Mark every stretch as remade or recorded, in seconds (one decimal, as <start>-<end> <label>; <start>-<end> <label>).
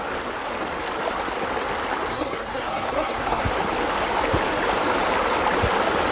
0.0-2.1 recorded; 2.1-3.4 remade; 3.4-6.1 recorded